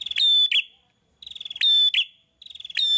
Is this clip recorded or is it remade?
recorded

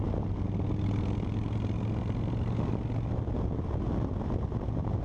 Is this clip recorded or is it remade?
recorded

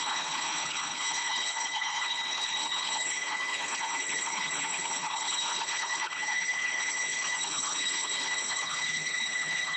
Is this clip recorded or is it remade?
remade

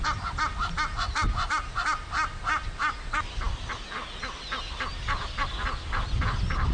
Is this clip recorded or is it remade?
recorded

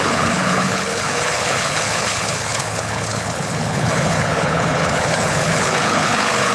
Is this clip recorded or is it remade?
remade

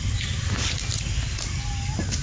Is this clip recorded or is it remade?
recorded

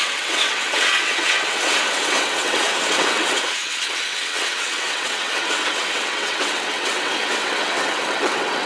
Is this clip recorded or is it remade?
remade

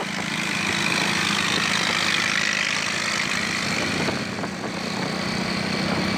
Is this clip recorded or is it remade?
recorded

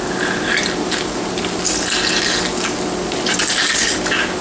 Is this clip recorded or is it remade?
recorded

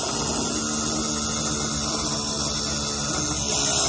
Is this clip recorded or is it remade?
recorded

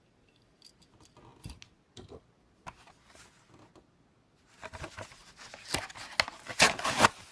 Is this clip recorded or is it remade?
recorded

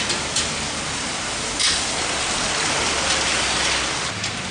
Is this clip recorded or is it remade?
recorded